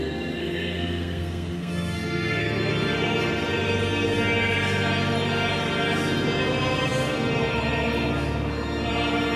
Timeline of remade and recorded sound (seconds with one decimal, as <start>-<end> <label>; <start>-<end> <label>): 0.0-0.4 recorded; 0.4-2.4 remade; 2.4-9.4 recorded